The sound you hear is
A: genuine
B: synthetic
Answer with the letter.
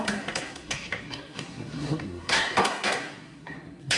B